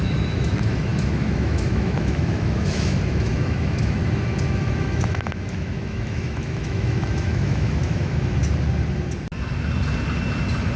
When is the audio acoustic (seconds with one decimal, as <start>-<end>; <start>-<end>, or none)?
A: 4.0-4.6; 8.4-10.8